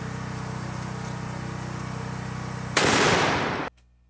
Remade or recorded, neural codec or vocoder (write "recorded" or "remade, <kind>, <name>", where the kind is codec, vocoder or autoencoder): recorded